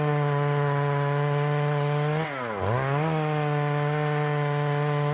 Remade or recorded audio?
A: recorded